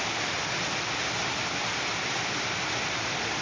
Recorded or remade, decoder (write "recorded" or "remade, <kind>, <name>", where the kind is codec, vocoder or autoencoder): recorded